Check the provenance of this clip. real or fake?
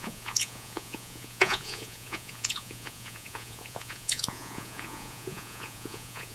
fake